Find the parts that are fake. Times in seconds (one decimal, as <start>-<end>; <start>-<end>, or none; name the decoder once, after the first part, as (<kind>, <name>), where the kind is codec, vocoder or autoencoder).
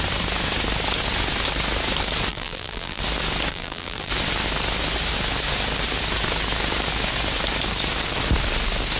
2.3-3.0 (vocoder, BigVGAN v2); 3.5-4.1